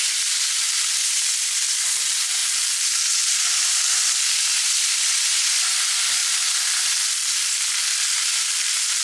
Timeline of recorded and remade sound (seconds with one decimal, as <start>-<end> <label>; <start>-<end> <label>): 0.0-2.4 remade; 2.4-3.3 recorded; 3.3-9.0 remade